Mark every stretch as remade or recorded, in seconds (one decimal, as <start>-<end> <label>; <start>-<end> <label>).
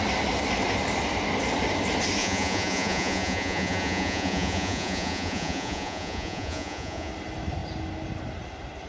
0.0-2.2 recorded; 2.2-7.1 remade; 7.1-8.9 recorded